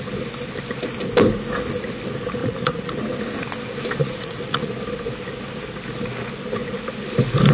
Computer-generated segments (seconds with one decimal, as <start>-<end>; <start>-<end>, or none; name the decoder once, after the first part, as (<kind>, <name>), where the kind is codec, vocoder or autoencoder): 2.4-2.9 (vocoder, Vocos); 4.0-4.7